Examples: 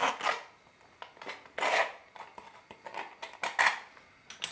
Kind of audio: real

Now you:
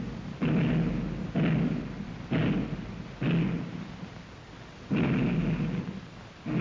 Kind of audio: real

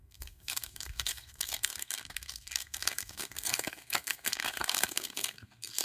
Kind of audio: fake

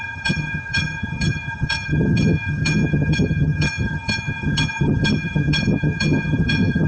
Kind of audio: fake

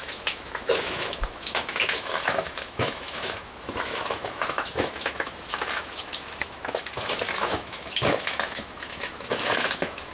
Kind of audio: fake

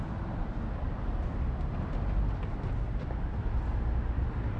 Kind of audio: real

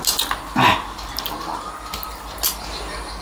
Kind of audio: real